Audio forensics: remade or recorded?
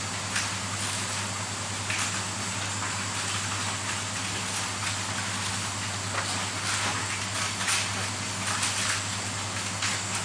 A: recorded